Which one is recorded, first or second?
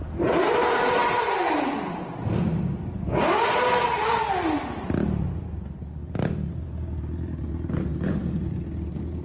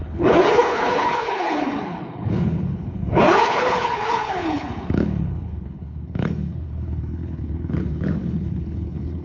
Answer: first